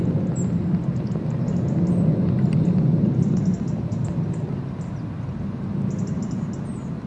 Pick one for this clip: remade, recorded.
recorded